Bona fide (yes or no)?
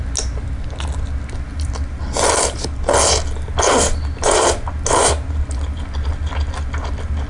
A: yes